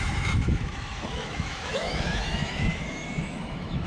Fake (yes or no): yes